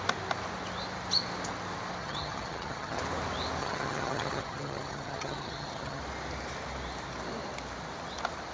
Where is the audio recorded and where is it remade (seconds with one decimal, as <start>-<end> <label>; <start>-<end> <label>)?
0.0-2.0 recorded; 2.0-3.0 remade; 3.0-3.6 recorded; 3.6-6.0 remade; 6.0-8.5 recorded